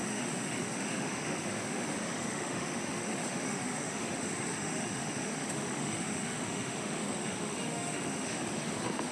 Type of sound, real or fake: fake